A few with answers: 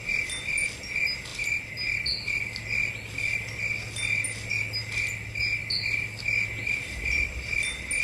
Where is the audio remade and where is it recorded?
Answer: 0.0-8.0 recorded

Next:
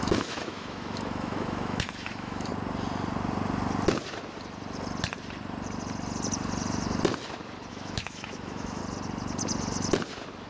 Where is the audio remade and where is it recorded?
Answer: 0.0-2.5 remade; 2.5-7.7 recorded; 7.7-8.8 remade; 8.8-10.5 recorded